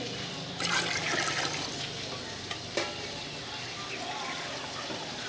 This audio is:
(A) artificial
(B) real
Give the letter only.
B